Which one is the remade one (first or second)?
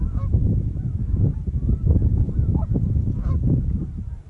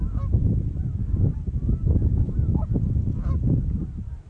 first